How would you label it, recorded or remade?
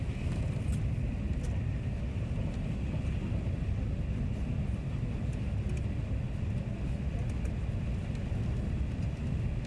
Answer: recorded